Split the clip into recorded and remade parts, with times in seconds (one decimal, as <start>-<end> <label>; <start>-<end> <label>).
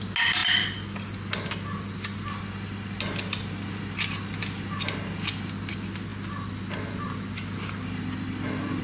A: 0.0-8.8 recorded